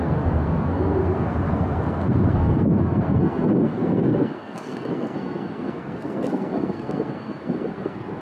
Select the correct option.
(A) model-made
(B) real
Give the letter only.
A